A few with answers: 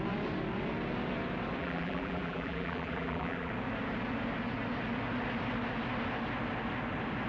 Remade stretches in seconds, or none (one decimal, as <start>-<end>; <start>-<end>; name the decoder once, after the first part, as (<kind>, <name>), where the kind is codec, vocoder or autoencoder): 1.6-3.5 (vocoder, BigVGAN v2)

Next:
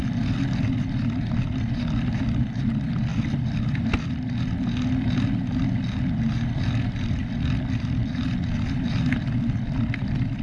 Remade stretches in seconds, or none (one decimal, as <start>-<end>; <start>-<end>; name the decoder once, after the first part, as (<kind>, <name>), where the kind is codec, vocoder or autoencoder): 3.1-4.2 (vocoder, BigVGAN v2)

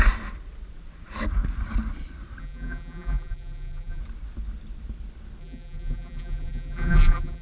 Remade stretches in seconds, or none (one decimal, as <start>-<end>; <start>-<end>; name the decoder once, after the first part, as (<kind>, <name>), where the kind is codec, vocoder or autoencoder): 2.4-4.0 (vocoder, BigVGAN v2); 5.4-7.4

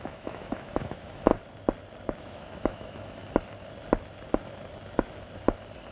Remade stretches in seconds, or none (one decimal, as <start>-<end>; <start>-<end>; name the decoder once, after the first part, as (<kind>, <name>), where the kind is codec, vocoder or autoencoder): 0.0-1.3 (autoencoder, DAC-VAE); 2.2-3.2